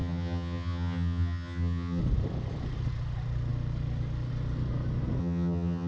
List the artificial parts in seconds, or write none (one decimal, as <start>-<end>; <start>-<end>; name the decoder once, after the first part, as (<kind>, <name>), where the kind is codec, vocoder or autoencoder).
0.0-2.0 (vocoder, HiFi-GAN); 5.2-5.9